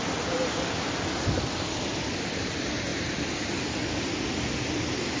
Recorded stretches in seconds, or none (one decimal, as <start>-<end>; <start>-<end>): 0.0-5.2